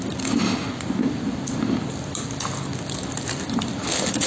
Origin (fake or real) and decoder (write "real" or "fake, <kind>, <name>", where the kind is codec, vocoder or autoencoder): real